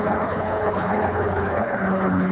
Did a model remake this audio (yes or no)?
yes